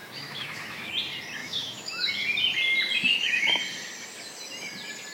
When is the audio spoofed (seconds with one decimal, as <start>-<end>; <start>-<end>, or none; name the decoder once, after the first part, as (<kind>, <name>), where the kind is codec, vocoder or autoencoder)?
0.0-0.9 (autoencoder, DAC-VAE); 1.4-2.1; 3.1-3.6

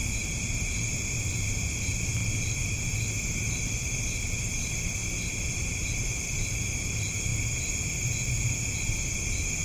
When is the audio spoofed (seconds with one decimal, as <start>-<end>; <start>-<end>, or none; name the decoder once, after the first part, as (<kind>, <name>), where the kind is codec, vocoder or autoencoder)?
0.0-2.2 (vocoder, BigVGAN v2); 4.5-5.0; 5.5-7.3